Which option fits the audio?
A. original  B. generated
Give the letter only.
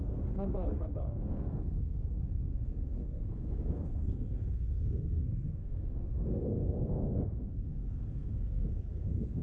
B